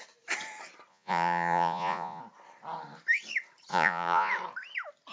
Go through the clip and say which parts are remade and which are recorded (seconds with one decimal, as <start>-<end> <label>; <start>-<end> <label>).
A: 0.0-0.9 recorded; 0.9-2.2 remade; 2.2-3.7 recorded; 3.7-4.3 remade; 4.3-5.1 recorded